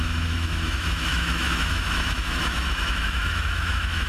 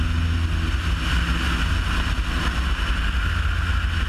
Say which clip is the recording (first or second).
second